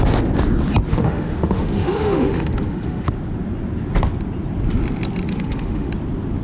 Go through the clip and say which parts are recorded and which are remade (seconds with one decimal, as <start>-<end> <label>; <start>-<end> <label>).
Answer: 0.0-0.9 recorded; 0.9-3.1 remade; 3.1-5.3 recorded; 5.3-5.9 remade; 5.9-6.4 recorded